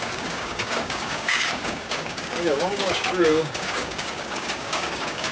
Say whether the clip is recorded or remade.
remade